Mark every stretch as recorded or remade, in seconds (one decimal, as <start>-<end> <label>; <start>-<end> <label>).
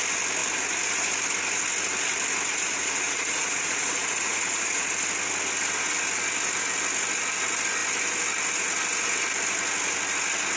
0.0-2.5 recorded; 2.5-4.9 remade; 4.9-10.6 recorded